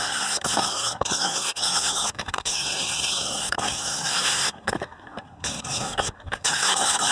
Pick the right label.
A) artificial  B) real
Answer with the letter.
A